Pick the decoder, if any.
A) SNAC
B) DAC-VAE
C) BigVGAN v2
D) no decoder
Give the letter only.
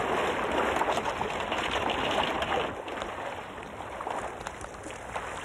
D